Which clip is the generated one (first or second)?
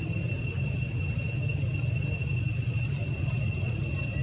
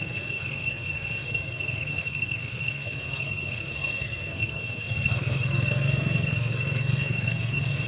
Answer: second